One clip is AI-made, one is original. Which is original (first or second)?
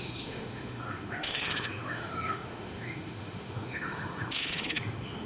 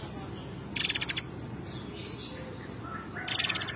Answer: second